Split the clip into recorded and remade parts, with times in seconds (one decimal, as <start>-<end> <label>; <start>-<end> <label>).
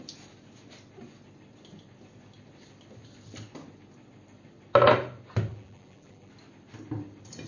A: 0.0-5.5 recorded; 5.5-6.3 remade; 6.3-7.5 recorded